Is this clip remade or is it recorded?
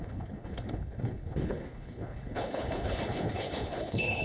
remade